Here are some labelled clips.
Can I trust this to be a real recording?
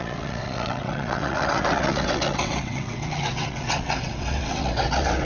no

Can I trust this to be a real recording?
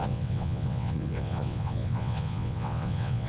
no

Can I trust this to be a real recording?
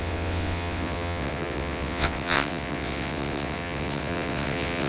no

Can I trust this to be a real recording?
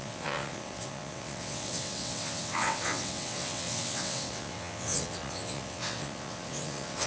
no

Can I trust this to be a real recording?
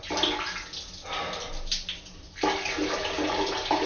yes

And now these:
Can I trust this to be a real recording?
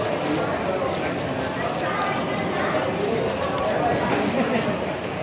yes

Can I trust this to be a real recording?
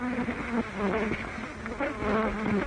yes